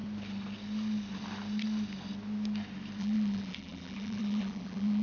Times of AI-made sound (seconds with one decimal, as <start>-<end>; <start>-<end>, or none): 3.0-5.0